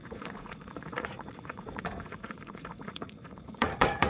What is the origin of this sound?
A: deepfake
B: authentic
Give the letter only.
A